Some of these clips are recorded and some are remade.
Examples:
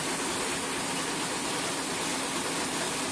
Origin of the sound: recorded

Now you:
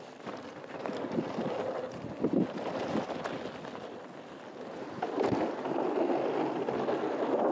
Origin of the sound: recorded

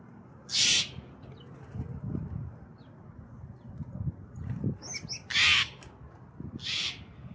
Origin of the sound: recorded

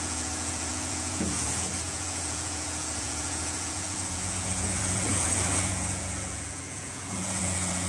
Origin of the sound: remade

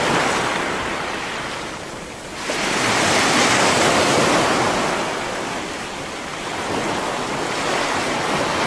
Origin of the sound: recorded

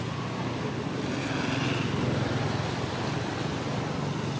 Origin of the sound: recorded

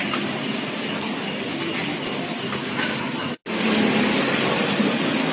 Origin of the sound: recorded